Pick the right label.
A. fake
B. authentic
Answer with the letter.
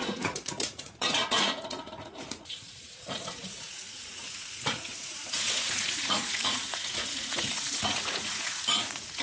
A